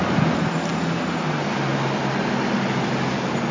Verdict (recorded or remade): recorded